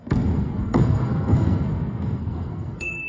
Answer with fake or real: fake